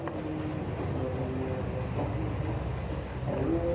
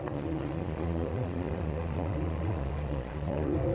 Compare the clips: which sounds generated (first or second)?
second